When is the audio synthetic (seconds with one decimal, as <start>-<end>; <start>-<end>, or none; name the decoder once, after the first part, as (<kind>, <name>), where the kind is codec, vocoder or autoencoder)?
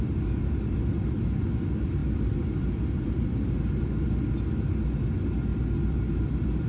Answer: 5.5-6.1 (vocoder, BigVGAN v2)